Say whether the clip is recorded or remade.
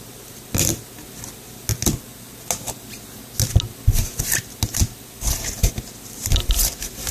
recorded